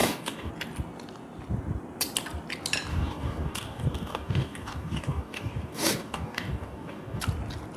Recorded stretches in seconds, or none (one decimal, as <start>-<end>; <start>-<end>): 0.5-2.9; 7.2-7.8